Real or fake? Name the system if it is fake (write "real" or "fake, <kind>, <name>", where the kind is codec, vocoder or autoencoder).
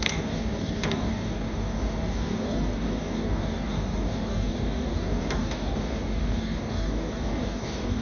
fake, codec, DAC